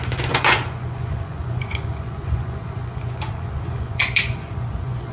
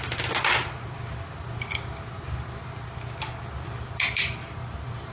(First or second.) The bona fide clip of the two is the second